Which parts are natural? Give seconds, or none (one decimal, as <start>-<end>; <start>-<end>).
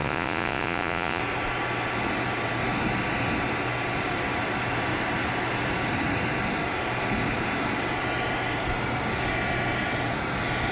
1.2-10.7